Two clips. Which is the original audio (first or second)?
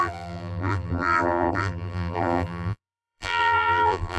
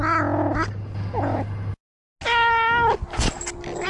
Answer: second